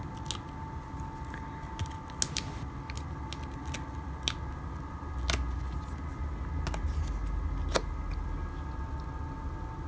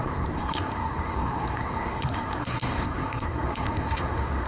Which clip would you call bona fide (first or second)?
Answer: first